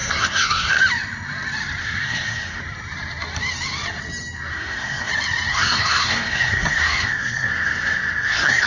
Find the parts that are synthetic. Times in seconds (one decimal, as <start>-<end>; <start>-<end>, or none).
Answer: 0.0-0.8; 1.8-2.6; 4.5-5.1; 5.5-8.7